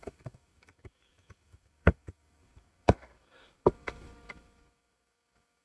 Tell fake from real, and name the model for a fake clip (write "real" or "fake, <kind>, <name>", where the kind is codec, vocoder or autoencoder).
fake, codec, DAC